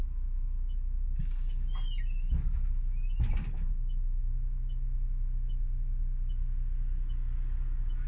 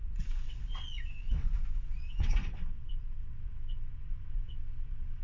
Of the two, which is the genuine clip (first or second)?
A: first